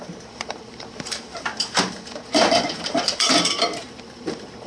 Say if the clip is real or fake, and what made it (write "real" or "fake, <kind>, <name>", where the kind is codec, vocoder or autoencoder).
fake, vocoder, BigVGAN v2